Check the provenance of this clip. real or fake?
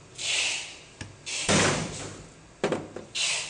real